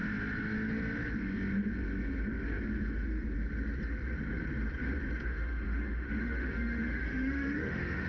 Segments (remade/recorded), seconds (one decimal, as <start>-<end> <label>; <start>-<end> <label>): 0.0-5.2 recorded; 5.2-8.1 remade